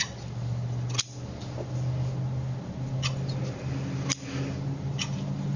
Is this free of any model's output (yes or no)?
yes